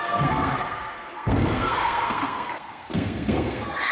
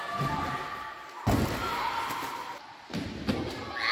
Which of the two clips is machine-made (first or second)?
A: first